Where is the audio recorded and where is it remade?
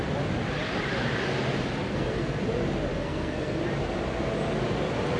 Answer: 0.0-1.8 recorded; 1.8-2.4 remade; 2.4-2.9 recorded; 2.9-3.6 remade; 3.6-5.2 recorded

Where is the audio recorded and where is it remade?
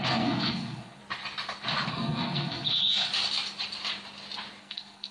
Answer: 0.0-1.0 remade; 1.0-1.9 recorded; 1.9-3.1 remade; 3.1-4.6 recorded; 4.6-5.1 remade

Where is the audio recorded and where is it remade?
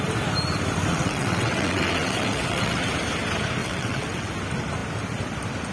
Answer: 0.0-0.9 recorded; 0.9-2.9 remade; 2.9-3.6 recorded; 3.6-4.3 remade; 4.3-5.7 recorded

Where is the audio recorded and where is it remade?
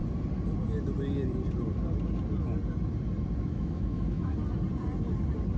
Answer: 0.0-3.4 recorded; 3.4-4.3 remade; 4.3-5.6 recorded